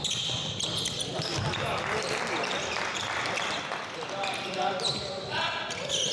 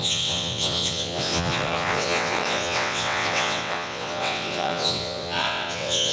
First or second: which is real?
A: first